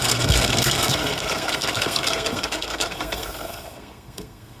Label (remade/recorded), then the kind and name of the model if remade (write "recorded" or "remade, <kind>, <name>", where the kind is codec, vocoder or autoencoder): remade, codec, SNAC